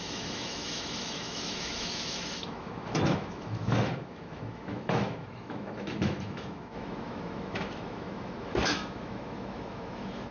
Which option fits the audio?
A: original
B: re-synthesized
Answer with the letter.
B